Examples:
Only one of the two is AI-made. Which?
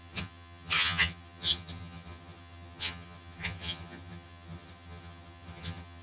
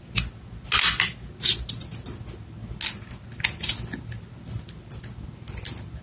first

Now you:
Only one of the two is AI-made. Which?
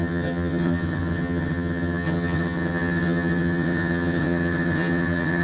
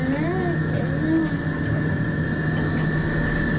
first